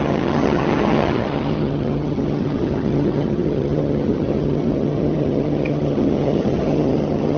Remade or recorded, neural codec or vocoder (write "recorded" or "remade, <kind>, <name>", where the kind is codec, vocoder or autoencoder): remade, vocoder, HiFi-GAN